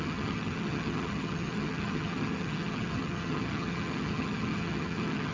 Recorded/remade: remade